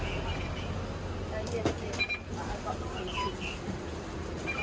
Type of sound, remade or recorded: recorded